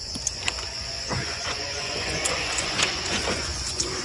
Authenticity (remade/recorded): remade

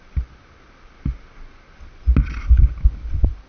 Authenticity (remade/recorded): recorded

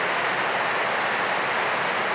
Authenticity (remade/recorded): recorded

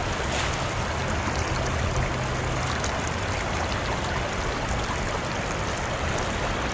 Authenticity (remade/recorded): recorded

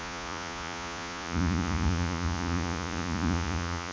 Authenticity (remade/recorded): remade